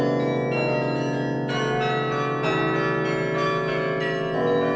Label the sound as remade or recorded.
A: recorded